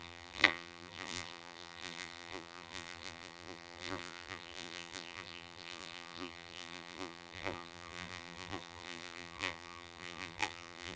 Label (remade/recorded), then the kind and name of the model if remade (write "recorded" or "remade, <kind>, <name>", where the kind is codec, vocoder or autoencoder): remade, vocoder, BigVGAN v2